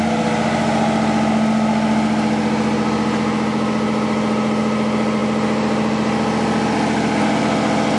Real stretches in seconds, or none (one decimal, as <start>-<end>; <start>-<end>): 0.0-8.0